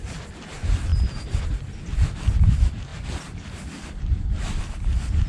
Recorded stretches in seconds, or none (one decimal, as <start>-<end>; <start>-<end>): 0.0-5.3